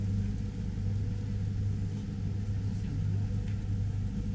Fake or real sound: real